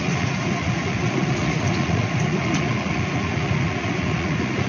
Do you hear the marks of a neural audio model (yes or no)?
yes